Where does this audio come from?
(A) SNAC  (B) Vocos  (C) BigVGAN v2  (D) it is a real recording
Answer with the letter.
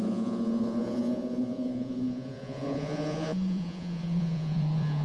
B